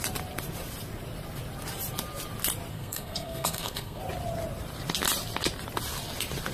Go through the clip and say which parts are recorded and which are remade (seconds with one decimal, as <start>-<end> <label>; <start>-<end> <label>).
0.0-2.7 recorded; 2.7-4.0 remade; 4.0-6.5 recorded